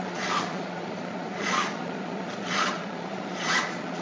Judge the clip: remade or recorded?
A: remade